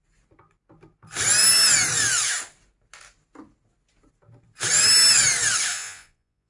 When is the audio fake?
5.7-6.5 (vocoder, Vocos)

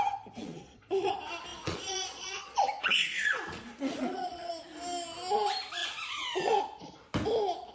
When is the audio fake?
0.4-1.1 (vocoder, Vocos); 1.5-4.5; 5.8-6.6